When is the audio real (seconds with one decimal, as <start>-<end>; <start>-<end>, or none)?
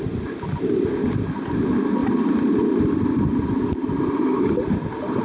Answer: 0.0-5.2